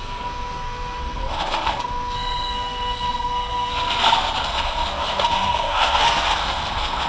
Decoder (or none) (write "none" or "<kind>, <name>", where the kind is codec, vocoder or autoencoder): codec, SNAC